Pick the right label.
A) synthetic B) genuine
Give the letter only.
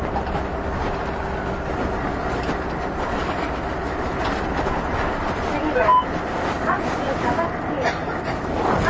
B